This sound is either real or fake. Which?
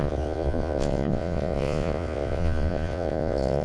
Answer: fake